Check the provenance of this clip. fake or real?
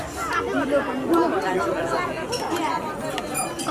real